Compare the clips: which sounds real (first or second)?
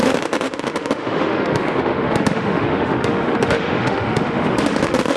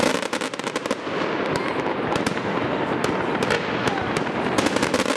second